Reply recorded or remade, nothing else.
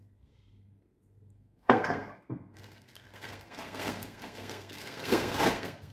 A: remade